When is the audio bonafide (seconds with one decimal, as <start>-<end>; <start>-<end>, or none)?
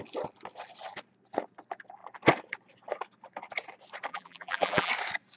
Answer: 0.0-4.1; 4.9-5.4